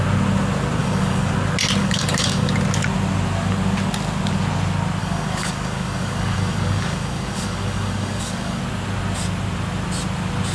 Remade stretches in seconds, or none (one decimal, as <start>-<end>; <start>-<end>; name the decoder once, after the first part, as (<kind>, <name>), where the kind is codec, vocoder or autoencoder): 0.8-1.3 (codec, DAC); 1.8-2.5; 5.0-8.6

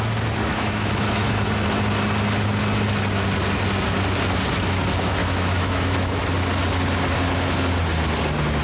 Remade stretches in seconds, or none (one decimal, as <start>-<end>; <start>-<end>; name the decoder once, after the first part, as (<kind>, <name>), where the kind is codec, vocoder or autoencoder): 0.5-1.3 (autoencoder, DAC-VAE); 5.2-6.2